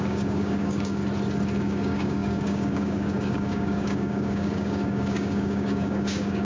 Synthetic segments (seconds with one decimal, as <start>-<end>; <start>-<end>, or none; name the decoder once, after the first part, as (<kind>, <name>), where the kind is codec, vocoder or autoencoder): 0.0-1.0 (codec, DAC); 1.6-6.4